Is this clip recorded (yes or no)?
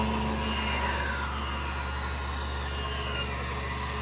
yes